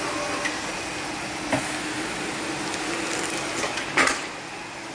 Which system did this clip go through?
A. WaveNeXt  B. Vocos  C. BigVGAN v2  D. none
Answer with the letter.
D